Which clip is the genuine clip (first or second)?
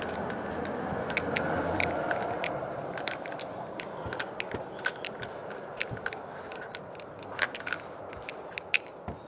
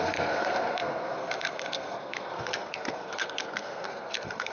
first